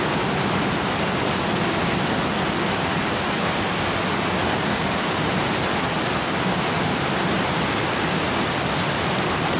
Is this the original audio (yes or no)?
yes